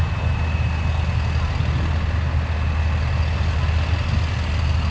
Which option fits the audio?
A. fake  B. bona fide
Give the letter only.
B